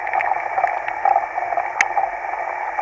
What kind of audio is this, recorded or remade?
recorded